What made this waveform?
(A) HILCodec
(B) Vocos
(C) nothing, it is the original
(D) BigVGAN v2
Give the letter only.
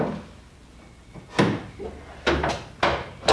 C